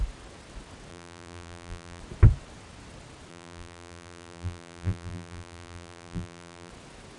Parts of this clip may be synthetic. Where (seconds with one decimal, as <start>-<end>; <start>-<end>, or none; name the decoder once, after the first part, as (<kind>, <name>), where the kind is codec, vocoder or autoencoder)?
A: 0.9-2.0 (vocoder, BigVGAN v2); 3.3-6.7